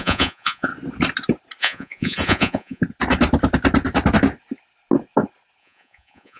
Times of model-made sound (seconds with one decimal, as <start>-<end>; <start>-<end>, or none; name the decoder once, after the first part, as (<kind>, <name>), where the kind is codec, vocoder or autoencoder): 0.0-0.7 (vocoder, Vocos); 1.6-2.8; 5.6-6.4